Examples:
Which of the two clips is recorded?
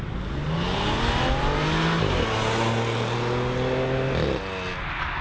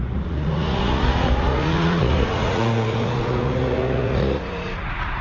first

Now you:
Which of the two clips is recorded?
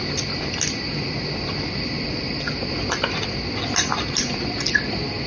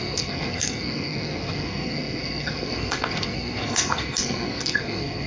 first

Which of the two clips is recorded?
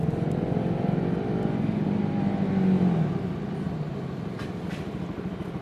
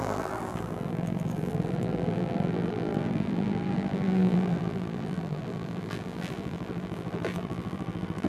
first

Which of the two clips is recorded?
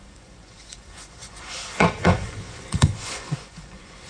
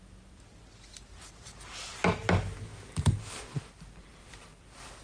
second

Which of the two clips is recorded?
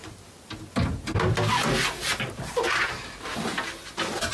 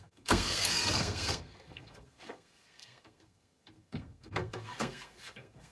first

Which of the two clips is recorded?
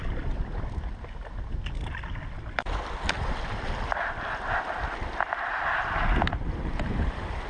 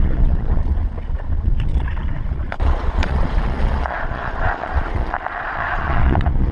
first